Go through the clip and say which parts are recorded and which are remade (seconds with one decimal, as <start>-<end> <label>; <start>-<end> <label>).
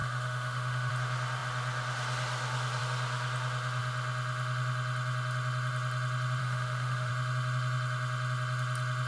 0.0-0.9 remade; 0.9-6.4 recorded; 6.4-7.1 remade; 7.1-9.1 recorded